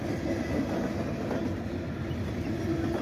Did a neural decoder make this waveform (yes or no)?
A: no